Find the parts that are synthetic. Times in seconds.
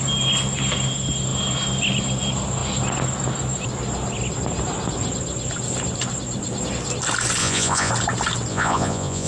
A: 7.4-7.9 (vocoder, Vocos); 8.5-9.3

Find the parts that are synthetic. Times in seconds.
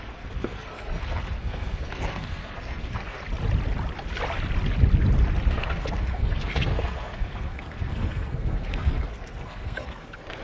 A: 0.0-3.2 (codec, SNAC); 5.5-10.4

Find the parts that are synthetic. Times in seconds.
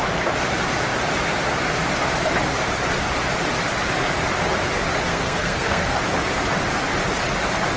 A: 5.1-6.0 (codec, SNAC)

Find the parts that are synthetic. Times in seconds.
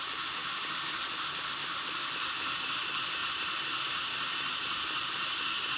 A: 0.0-2.0 (vocoder, BigVGAN v2); 2.6-3.2; 3.9-5.8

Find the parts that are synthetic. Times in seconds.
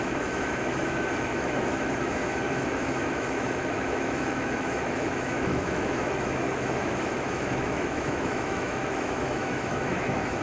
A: 0.0-10.4 (autoencoder, DAC-VAE)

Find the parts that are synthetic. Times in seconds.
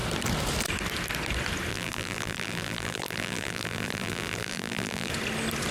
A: 1.7-5.1 (vocoder, BigVGAN v2)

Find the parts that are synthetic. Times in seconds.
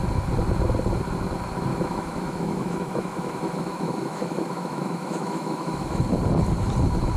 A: 1.7-6.0 (autoencoder, DAC-VAE)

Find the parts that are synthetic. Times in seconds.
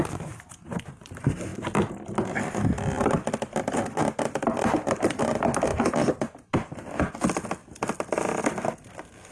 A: none